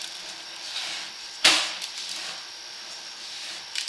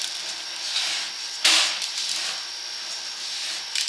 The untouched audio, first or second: second